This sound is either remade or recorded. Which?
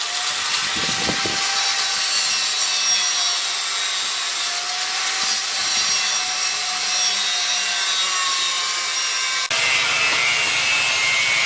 recorded